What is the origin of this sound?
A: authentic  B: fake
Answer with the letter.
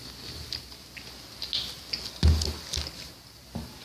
A